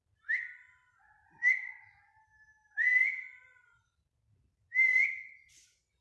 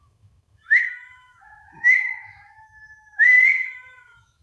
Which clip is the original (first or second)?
first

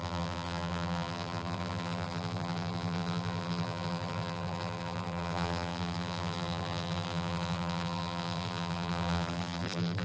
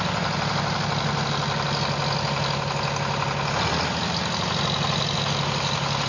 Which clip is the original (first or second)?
second